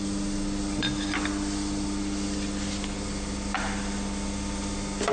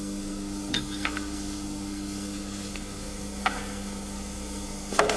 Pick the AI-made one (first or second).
second